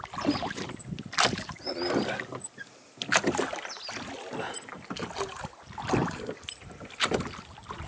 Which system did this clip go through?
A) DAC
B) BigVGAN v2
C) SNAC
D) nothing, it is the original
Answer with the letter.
D